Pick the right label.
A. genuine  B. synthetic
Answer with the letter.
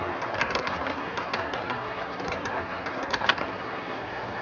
B